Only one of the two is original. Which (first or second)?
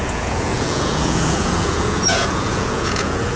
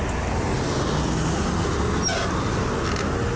second